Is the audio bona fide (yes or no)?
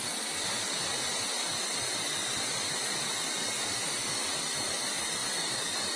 yes